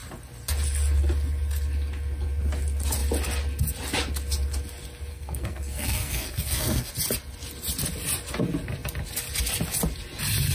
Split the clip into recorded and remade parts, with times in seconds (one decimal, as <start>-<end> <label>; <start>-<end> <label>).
0.0-5.1 recorded; 5.1-6.9 remade; 6.9-10.5 recorded